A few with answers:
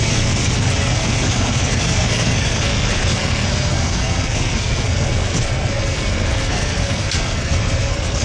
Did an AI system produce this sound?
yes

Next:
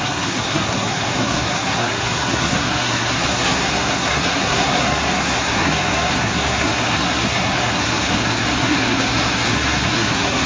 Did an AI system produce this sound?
yes